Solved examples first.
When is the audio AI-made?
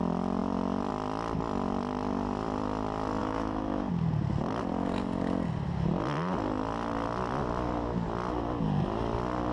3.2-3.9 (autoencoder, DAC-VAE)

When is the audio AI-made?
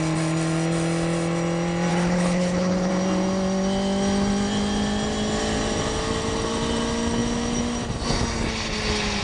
1.9-2.9 (codec, HILCodec)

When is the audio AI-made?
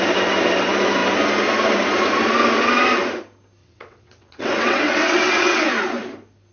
3.6-5.7 (vocoder, WaveNeXt)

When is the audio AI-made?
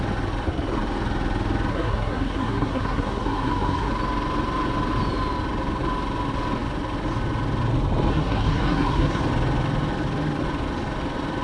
1.7-3.9 (codec, SNAC); 8.1-9.2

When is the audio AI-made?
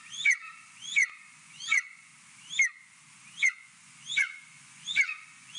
0.0-2.1 (vocoder, Vocos); 3.4-5.6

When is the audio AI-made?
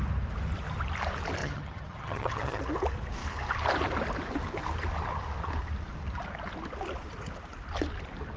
1.4-2.6 (vocoder, HiFi-GAN)